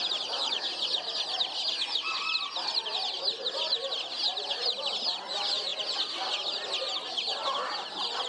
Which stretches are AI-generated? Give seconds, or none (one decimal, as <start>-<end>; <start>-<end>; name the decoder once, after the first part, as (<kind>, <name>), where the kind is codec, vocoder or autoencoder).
none